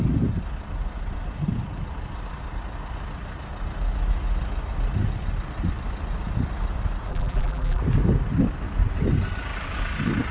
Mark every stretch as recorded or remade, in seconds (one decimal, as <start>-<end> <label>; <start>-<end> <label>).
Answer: 0.0-7.1 recorded; 7.1-7.8 remade; 7.8-10.3 recorded